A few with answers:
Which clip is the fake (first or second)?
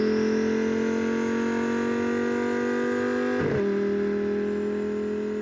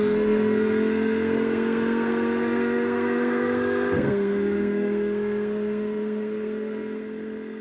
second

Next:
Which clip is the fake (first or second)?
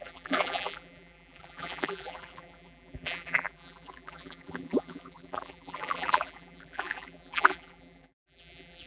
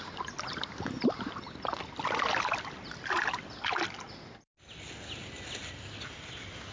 first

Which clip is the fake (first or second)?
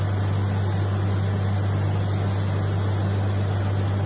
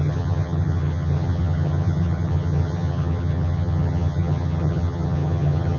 second